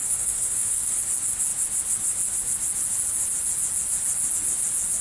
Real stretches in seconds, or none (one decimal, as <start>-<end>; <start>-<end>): 0.9-5.0